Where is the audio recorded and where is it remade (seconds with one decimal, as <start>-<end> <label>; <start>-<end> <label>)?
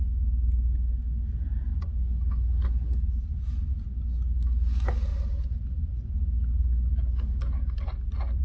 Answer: 0.0-8.4 recorded